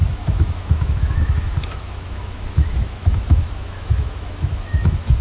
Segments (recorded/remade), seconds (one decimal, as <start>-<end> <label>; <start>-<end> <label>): 0.0-5.2 remade